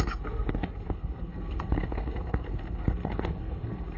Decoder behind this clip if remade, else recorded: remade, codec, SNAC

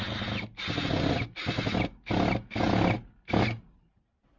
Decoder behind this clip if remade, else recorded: recorded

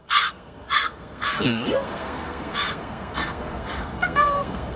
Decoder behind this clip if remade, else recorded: remade, codec, SNAC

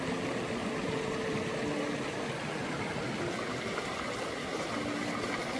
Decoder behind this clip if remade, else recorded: recorded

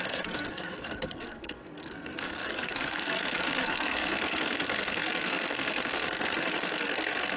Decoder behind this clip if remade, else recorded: remade, codec, SNAC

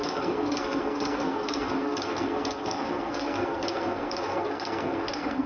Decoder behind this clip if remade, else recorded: remade, codec, SNAC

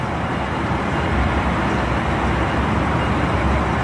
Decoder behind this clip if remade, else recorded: recorded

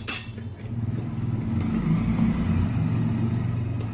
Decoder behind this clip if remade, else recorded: recorded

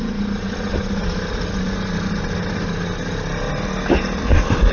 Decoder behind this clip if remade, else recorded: recorded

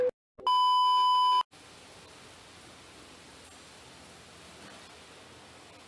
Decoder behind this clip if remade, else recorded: recorded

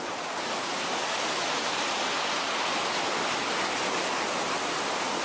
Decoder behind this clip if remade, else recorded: recorded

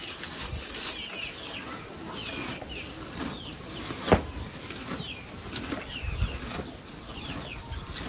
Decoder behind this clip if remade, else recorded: recorded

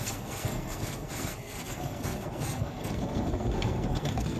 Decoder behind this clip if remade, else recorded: remade, codec, SNAC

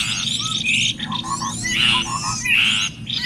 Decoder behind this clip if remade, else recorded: recorded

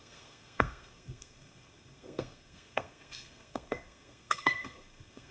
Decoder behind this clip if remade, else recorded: remade, codec, SNAC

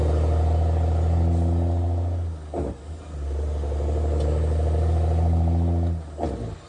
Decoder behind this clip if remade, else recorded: recorded